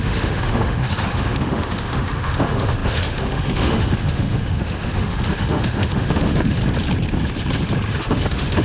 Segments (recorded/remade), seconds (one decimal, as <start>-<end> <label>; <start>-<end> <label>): 0.0-6.6 remade; 6.6-7.9 recorded; 7.9-8.6 remade